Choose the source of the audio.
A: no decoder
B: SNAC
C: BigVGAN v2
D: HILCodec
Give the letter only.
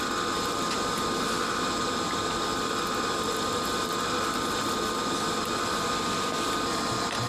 A